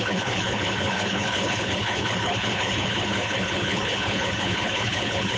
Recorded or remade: remade